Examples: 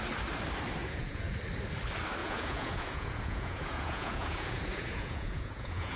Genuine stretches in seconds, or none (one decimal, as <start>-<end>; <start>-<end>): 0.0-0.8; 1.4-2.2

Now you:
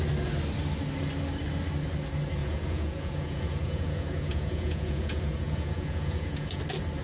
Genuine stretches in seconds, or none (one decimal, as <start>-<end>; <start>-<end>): 0.0-2.4; 6.6-7.0

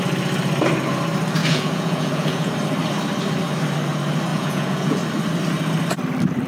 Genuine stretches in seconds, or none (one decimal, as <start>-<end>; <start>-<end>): 0.0-1.4; 2.5-4.3; 5.0-6.5